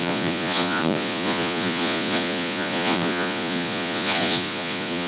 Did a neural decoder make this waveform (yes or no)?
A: yes